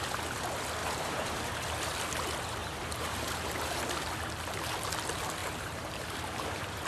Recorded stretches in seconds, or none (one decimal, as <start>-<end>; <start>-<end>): 0.0-0.8; 1.4-2.6; 3.8-5.4